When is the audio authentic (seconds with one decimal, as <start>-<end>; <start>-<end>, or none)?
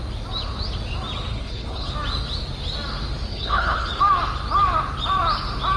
0.0-1.3; 1.9-3.3; 4.0-5.8